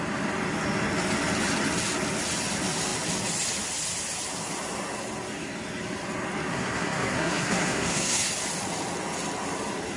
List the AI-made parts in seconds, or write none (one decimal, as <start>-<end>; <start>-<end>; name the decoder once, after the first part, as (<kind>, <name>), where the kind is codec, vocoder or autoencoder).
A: 6.5-8.3 (codec, SNAC)